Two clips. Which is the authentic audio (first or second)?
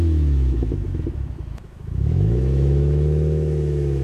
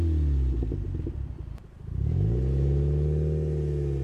second